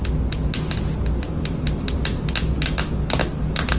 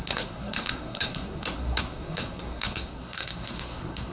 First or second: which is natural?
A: first